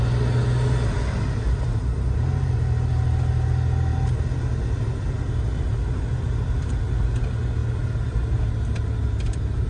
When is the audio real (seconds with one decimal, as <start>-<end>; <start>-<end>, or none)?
0.0-9.7